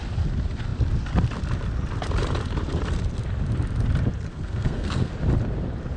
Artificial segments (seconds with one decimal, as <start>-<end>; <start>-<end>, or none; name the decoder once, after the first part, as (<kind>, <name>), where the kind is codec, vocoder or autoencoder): 4.3-5.1 (codec, SNAC)